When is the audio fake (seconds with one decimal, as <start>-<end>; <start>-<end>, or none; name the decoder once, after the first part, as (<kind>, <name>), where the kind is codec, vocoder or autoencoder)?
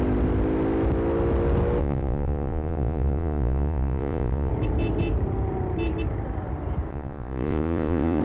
1.8-4.5 (vocoder, Vocos); 6.9-8.2